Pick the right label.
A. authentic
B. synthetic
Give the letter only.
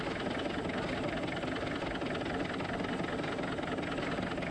A